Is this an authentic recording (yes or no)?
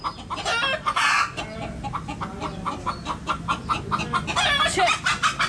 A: yes